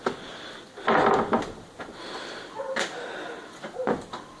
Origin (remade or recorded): recorded